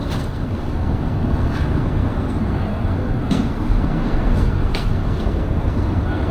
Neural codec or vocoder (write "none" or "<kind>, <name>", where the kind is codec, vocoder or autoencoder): codec, SNAC